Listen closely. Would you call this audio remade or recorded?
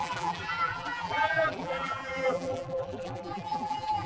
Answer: remade